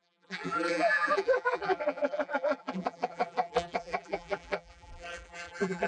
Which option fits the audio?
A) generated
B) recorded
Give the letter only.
A